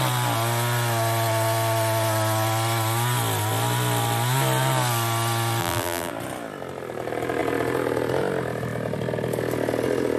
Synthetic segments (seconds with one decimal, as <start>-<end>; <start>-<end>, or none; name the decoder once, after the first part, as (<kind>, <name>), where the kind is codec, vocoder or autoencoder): 5.6-6.1 (vocoder, BigVGAN v2)